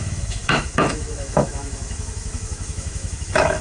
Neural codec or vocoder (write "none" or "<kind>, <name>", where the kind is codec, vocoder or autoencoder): autoencoder, DAC-VAE